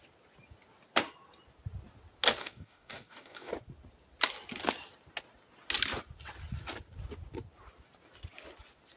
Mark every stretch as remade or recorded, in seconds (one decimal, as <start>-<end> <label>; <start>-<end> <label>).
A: 0.0-2.4 recorded; 2.4-3.5 remade; 3.5-9.0 recorded